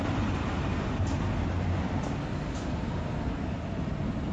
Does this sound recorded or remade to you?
recorded